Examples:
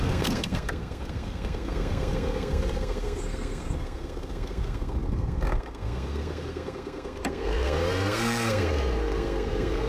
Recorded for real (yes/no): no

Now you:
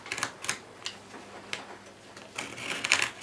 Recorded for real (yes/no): yes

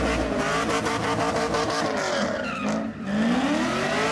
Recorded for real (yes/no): yes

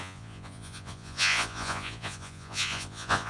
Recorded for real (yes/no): no